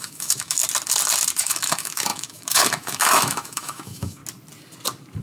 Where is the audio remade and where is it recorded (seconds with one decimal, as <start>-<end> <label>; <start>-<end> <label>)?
0.0-0.6 remade; 0.6-1.4 recorded; 1.4-4.2 remade; 4.2-5.2 recorded